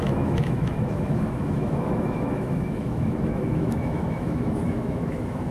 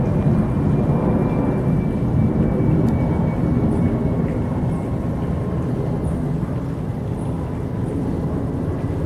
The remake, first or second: first